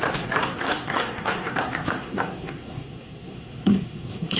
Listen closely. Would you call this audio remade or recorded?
remade